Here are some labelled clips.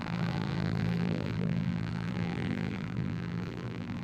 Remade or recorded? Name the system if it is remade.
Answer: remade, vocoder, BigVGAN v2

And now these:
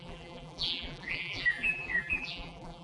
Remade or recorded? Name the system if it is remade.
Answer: remade, vocoder, BigVGAN v2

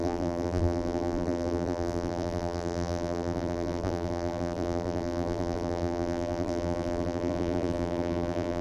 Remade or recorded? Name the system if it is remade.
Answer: remade, vocoder, BigVGAN v2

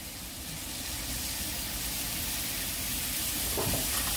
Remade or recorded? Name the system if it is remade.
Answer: recorded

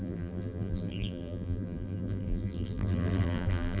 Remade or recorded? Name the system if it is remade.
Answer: remade, vocoder, BigVGAN v2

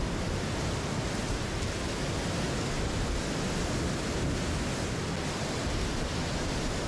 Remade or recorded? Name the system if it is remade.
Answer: recorded